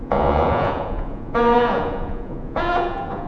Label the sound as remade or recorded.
remade